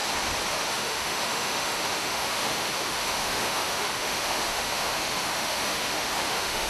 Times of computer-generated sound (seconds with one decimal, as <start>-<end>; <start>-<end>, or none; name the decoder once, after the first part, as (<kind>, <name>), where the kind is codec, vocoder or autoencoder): 0.5-6.7 (autoencoder, DAC-VAE)